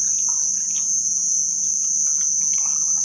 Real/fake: real